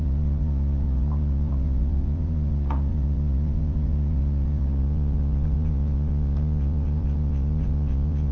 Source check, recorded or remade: remade